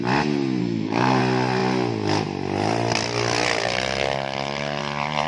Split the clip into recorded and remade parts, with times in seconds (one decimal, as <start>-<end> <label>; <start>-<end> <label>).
0.0-0.6 recorded; 0.6-1.2 remade; 1.2-5.3 recorded